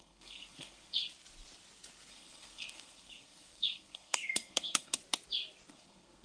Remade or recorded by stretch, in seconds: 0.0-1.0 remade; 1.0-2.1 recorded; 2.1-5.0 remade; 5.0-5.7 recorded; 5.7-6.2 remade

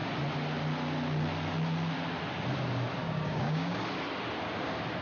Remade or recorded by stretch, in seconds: 0.0-3.0 recorded; 3.0-3.8 remade; 3.8-5.0 recorded

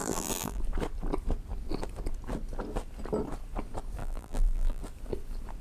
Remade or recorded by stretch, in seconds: 0.0-0.6 remade; 0.6-4.0 recorded; 4.0-4.8 remade; 4.8-5.6 recorded

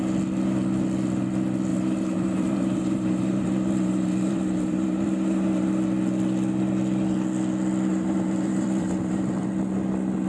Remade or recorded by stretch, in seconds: 0.0-1.7 recorded; 1.7-5.7 remade; 5.7-7.9 recorded; 7.9-9.5 remade; 9.5-10.3 recorded

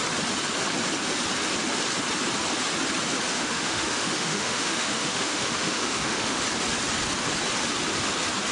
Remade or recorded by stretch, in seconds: 0.0-3.3 recorded; 3.3-6.4 remade; 6.4-8.5 recorded